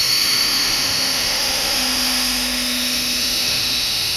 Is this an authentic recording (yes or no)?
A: no